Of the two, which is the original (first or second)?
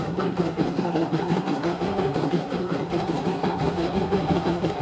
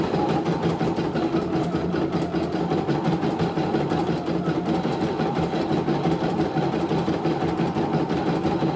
second